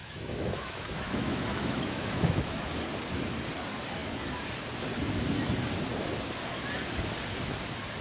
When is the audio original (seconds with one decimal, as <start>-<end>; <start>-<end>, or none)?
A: 2.7-8.0

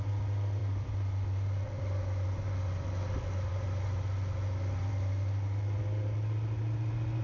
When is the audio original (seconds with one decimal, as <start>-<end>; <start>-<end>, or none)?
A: 0.0-7.2

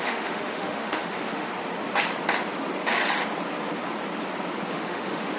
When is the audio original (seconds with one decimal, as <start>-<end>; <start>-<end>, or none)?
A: 1.5-4.7

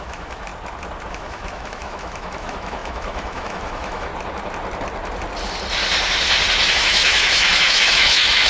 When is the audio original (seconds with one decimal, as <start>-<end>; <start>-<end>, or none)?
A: 0.5-1.1; 4.1-6.7

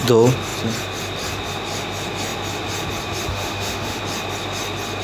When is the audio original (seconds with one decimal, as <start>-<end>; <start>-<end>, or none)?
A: 0.0-3.3; 4.0-5.0